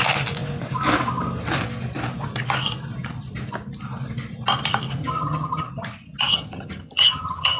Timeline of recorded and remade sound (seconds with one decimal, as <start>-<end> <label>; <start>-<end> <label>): 0.0-5.0 recorded; 5.0-5.7 remade; 5.7-6.3 recorded; 6.3-7.6 remade